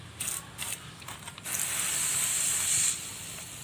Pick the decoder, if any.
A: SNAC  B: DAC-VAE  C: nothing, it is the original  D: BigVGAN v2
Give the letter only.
C